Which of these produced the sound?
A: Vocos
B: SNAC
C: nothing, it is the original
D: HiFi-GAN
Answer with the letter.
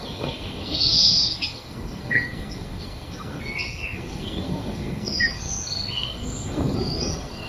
B